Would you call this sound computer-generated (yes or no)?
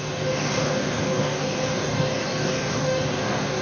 yes